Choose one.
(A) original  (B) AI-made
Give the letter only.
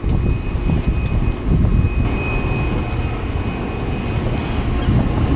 A